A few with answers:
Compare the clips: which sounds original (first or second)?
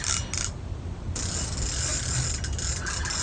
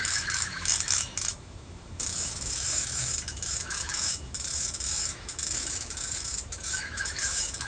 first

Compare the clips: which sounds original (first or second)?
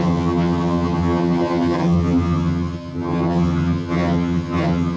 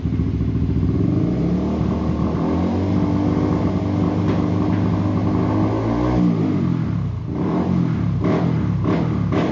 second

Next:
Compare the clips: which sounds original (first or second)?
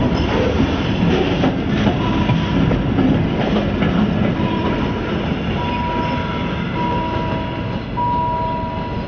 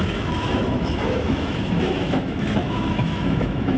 first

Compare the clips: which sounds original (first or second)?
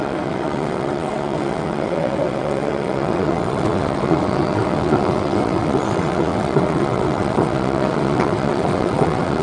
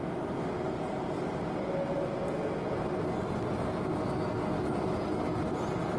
second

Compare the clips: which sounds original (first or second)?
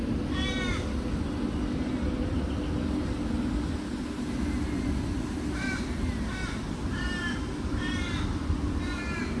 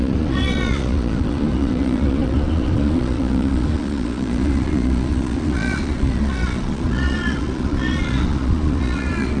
first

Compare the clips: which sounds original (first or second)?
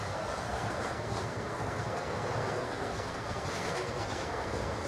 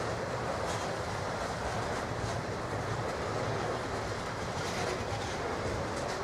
second